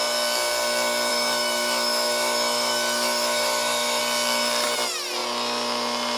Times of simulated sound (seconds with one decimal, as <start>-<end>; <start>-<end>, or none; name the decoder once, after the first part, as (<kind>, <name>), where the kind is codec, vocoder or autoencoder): 1.1-4.0 (autoencoder, DAC-VAE)